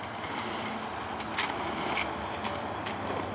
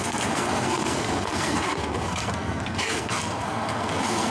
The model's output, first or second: second